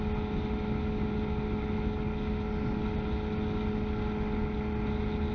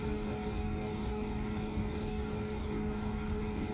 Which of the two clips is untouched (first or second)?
first